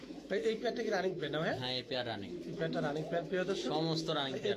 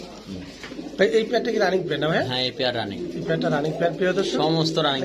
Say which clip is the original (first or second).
second